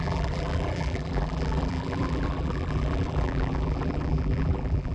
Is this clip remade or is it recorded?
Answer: remade